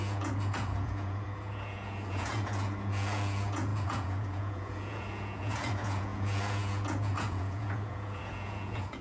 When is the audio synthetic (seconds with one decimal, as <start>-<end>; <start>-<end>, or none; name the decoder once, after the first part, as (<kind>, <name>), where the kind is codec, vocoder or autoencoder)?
0.0-9.0 (vocoder, Vocos)